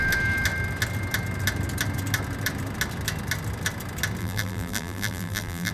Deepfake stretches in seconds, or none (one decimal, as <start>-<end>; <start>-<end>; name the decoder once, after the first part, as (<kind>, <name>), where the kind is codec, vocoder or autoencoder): 4.2-5.7 (vocoder, BigVGAN v2)